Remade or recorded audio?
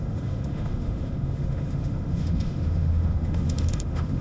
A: remade